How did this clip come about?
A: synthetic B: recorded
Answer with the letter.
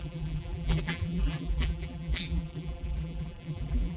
A